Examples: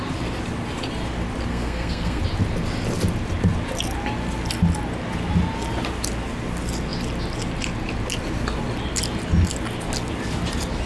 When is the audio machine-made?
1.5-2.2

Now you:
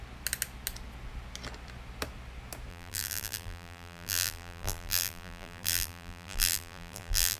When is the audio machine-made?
2.7-7.4

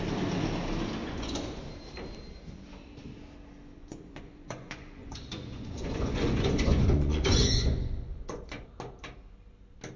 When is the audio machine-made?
1.0-1.6; 3.8-8.7

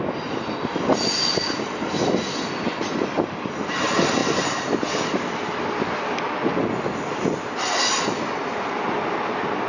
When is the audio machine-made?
none

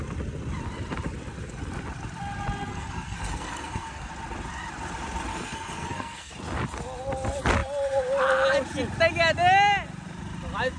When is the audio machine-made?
2.7-4.1; 5.3-6.3

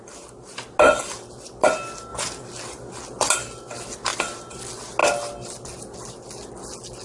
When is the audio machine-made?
none

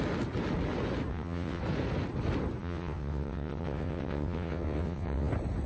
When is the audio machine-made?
1.1-1.6; 2.6-5.3